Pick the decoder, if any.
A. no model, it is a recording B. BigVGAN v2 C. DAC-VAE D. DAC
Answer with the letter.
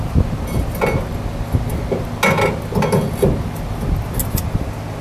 A